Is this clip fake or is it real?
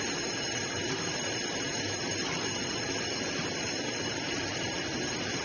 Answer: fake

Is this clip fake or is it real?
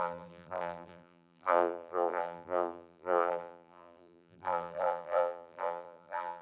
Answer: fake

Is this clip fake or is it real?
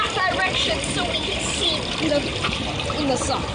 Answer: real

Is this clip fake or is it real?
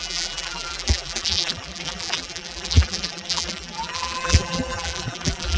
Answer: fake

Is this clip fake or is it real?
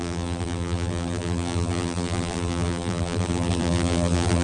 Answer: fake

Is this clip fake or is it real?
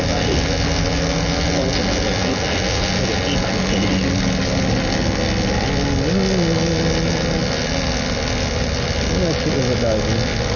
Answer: real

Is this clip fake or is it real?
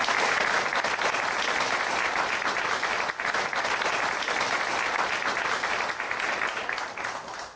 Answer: real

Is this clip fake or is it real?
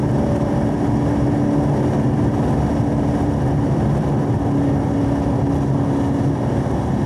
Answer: real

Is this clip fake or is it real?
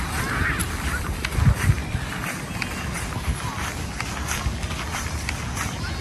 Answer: real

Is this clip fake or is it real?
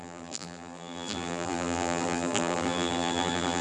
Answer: fake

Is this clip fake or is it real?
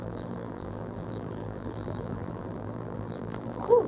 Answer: fake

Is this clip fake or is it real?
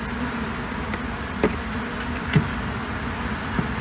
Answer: real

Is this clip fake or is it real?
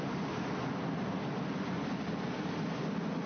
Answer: real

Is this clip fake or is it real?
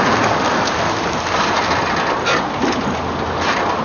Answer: real